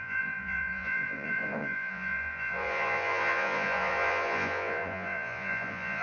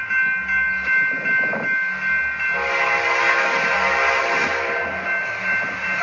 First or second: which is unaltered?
second